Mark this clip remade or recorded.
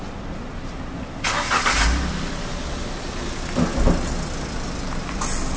recorded